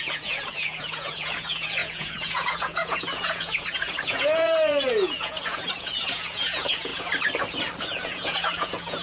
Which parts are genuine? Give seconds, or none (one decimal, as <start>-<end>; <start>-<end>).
6.9-7.8